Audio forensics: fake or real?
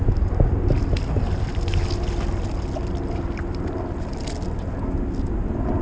real